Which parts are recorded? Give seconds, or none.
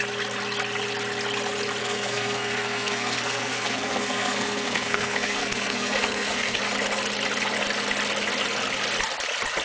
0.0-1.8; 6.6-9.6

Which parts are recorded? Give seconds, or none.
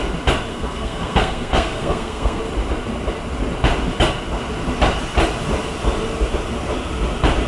0.0-0.5; 2.4-7.5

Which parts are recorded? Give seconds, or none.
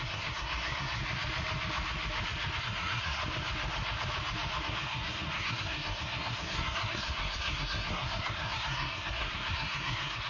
1.0-2.6; 3.2-4.6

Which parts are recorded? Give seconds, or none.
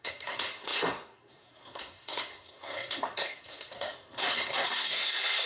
none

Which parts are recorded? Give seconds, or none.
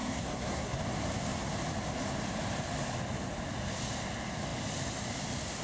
0.8-5.6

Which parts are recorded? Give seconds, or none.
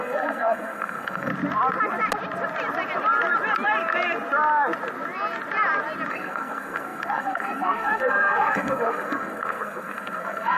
1.3-6.1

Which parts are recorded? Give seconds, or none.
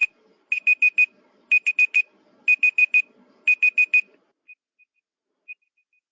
0.0-6.1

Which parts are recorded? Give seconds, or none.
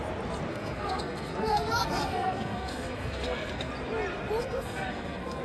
0.0-0.5; 3.7-4.4